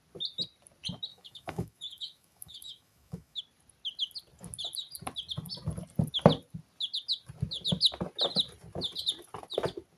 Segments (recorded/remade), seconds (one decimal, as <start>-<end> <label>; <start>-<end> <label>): 0.0-1.1 recorded; 1.1-3.4 remade; 3.4-10.0 recorded